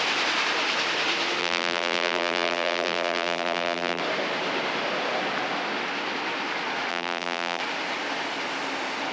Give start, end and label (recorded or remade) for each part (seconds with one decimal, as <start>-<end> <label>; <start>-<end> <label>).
0.0-1.4 recorded; 1.4-4.0 remade; 4.0-6.9 recorded; 6.9-7.6 remade; 7.6-9.1 recorded